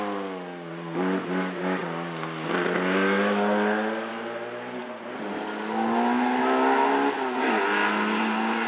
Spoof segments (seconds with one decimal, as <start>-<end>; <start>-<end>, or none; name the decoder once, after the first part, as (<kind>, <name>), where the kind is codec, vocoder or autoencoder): none